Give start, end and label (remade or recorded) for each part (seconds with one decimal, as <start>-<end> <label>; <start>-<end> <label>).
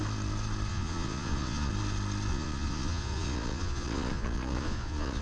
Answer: 0.0-0.7 recorded; 0.7-1.7 remade; 1.7-2.3 recorded; 2.3-5.2 remade